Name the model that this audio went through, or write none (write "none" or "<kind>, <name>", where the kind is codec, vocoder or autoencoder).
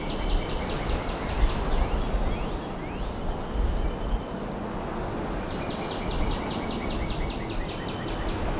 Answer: none